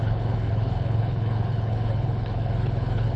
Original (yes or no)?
no